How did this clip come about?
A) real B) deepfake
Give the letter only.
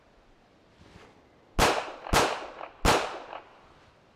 A